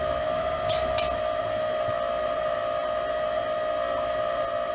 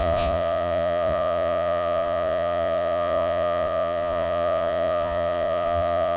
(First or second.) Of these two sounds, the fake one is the second